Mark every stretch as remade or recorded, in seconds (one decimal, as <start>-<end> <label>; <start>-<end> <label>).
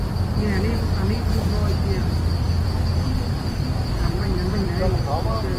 0.0-2.0 recorded; 2.0-4.7 remade; 4.7-5.6 recorded